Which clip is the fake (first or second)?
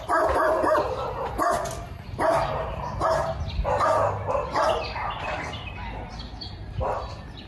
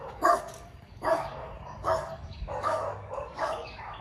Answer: second